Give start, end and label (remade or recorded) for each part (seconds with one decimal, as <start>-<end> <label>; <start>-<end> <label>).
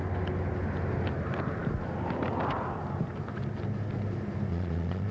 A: 0.0-4.5 recorded; 4.5-5.1 remade